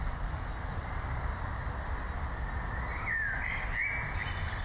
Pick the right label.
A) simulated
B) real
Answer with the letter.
B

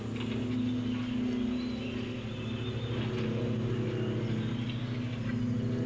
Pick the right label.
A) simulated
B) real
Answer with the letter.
B